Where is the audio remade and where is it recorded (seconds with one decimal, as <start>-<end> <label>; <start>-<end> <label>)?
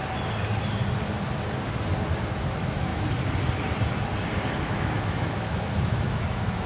0.0-2.2 recorded; 2.2-2.9 remade; 2.9-4.6 recorded; 4.6-6.7 remade